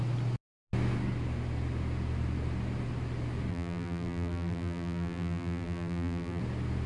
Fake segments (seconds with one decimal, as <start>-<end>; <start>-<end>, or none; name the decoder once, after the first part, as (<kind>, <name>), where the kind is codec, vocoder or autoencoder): 3.5-6.4 (vocoder, BigVGAN v2)